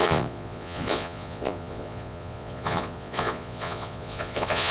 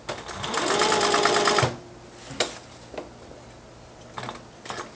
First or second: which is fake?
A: first